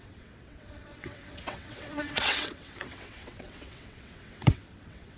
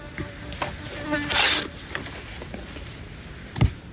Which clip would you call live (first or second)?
second